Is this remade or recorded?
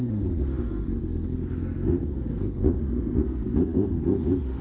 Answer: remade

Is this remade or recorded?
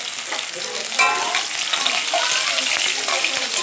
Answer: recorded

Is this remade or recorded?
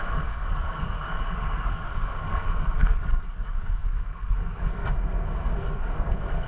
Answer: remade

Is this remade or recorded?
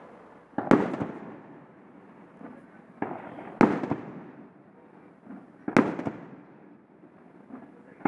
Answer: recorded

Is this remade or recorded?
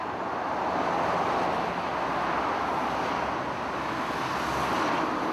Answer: recorded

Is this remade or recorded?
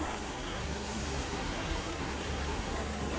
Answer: remade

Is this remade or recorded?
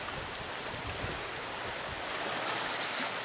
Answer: recorded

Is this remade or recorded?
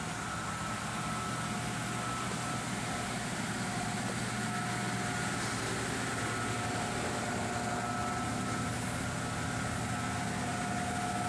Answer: recorded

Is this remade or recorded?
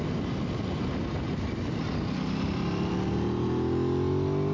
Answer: recorded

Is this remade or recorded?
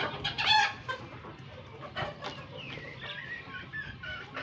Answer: recorded